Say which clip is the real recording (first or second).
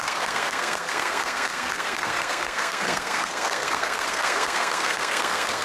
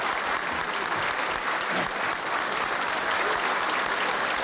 second